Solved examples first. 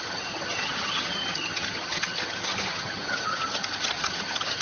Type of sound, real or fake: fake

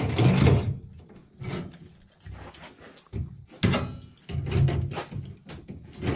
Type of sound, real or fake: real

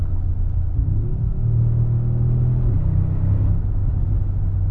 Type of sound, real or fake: real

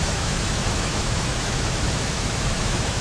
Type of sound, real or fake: fake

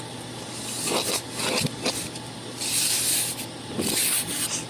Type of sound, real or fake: real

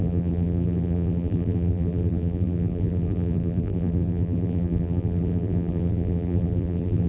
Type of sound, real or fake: fake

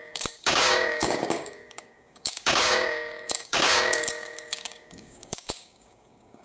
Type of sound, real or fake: fake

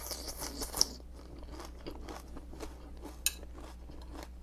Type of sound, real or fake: real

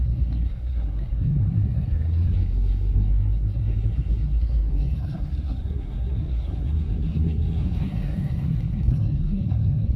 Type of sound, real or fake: fake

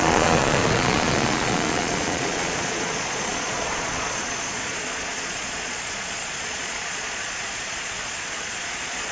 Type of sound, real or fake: fake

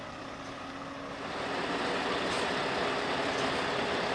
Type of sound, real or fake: real